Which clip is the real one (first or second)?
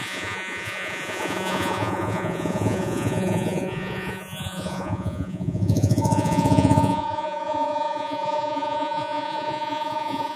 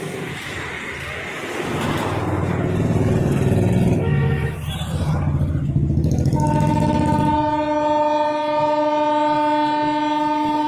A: second